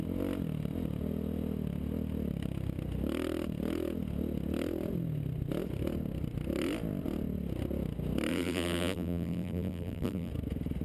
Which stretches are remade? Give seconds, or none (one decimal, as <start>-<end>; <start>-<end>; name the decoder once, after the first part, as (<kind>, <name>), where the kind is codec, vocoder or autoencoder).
8.3-10.3 (vocoder, BigVGAN v2)